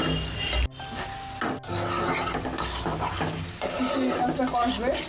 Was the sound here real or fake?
real